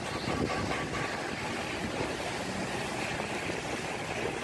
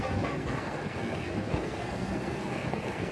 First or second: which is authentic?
first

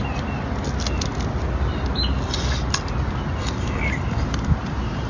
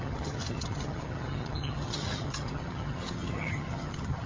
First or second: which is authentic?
first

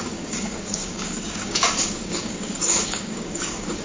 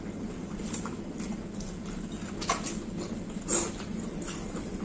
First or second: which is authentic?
second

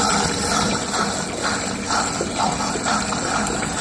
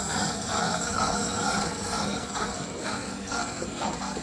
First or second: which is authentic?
first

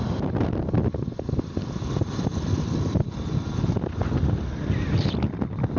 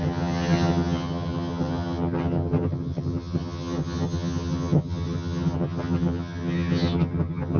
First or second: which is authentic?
first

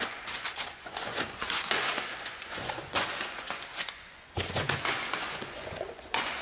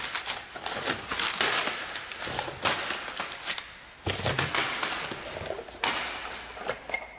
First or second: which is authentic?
second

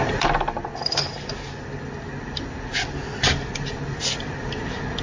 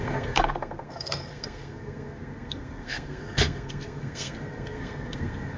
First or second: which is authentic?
first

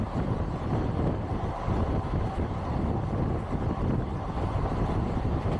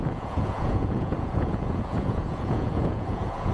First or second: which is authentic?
first